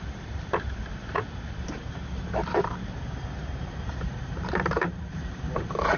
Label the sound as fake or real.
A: fake